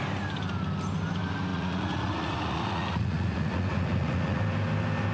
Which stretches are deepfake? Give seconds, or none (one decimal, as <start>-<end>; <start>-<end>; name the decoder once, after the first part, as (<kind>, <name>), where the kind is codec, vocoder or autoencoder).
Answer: 1.5-4.4 (vocoder, Vocos)